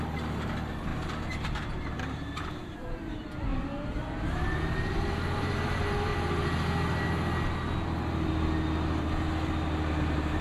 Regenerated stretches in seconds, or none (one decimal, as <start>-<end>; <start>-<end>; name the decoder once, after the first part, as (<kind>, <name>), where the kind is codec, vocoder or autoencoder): 0.0-0.9 (vocoder, BigVGAN v2); 2.0-6.1; 10.0-10.4